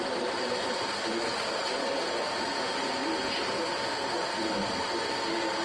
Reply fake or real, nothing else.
real